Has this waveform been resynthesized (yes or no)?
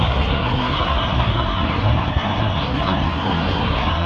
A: yes